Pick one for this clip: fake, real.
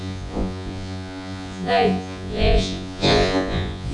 fake